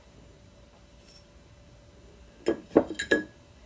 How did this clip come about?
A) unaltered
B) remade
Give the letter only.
A